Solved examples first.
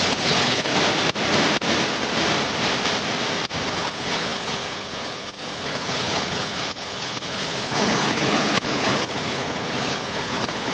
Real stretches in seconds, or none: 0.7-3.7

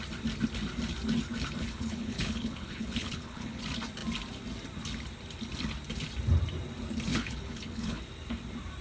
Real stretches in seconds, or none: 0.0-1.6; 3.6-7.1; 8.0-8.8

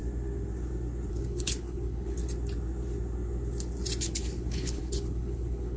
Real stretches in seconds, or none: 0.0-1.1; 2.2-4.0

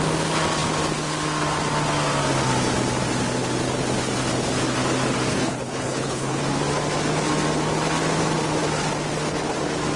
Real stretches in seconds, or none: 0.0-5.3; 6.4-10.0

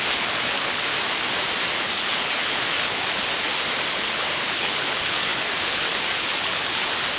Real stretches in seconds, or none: 0.9-1.8; 3.2-3.9

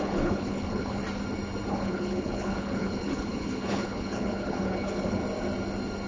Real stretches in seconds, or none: 1.0-1.7; 5.2-6.1